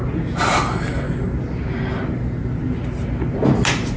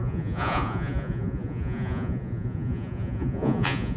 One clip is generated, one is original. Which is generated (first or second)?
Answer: second